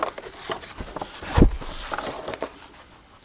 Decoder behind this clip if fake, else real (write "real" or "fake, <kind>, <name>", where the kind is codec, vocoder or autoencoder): real